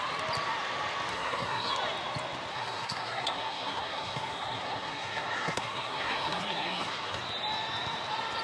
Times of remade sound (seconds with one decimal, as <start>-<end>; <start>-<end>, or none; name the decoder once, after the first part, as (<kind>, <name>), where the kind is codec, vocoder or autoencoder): 1.1-1.7 (codec, SNAC); 2.5-7.2